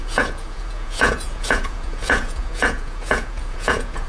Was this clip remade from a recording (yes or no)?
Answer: yes